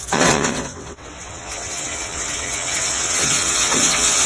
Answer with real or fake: fake